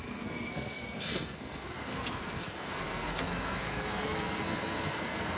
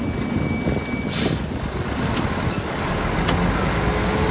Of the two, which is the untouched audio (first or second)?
second